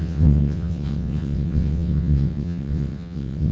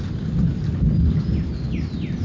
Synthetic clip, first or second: first